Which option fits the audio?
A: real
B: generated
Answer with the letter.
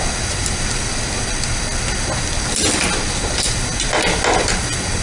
A